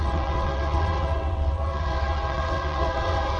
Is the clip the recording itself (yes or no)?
no